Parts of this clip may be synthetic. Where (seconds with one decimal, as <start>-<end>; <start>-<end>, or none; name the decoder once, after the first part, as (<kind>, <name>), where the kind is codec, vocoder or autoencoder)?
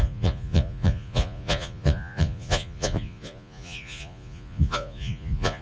0.0-5.6 (vocoder, Vocos)